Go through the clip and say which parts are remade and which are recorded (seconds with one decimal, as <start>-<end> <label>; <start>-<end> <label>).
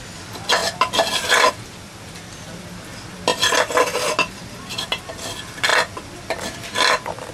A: 0.0-7.3 recorded